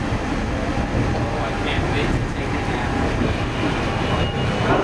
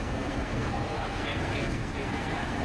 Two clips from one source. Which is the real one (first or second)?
first